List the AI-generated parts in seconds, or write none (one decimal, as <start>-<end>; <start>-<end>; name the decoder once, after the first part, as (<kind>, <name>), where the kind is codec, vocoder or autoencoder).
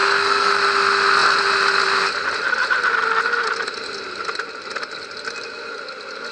0.0-0.5 (codec, SNAC)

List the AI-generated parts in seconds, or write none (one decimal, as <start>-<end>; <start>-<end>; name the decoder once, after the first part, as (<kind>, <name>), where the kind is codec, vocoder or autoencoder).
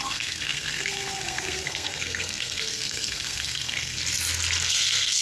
0.0-4.0 (codec, SNAC); 4.6-5.2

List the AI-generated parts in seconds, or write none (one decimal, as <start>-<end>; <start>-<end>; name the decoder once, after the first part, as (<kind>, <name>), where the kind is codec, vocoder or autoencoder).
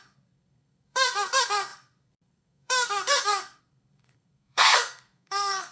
0.0-5.7 (codec, SNAC)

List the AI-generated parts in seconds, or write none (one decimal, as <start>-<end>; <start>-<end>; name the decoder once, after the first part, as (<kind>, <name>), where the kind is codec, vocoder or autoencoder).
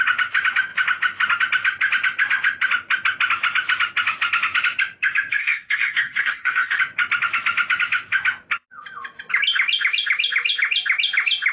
5.4-6.8 (codec, SNAC)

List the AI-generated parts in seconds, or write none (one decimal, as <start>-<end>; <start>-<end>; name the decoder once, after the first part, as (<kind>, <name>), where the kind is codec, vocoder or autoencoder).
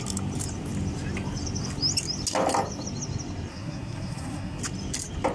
3.5-4.6 (codec, SNAC)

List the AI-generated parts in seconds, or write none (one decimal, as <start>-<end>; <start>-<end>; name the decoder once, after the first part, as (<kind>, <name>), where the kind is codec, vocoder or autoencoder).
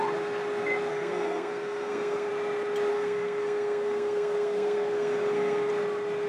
0.9-2.3 (codec, SNAC); 2.9-5.7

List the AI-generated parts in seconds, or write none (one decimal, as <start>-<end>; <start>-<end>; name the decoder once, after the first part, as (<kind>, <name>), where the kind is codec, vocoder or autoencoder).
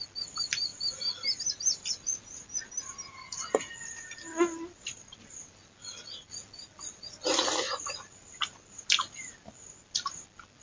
none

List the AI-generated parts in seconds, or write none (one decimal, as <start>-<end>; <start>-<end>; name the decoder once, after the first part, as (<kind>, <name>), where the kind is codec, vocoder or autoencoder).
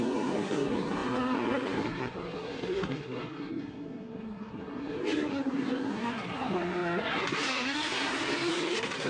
0.0-9.1 (codec, SNAC)